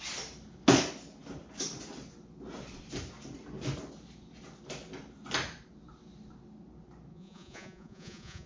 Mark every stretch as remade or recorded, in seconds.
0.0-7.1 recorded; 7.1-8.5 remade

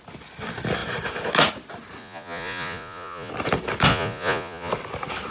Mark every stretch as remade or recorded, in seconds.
0.0-2.0 recorded; 2.0-3.3 remade; 3.3-3.9 recorded; 3.9-4.7 remade; 4.7-5.3 recorded